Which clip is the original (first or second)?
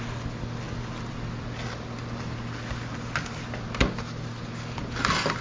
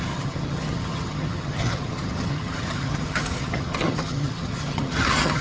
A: first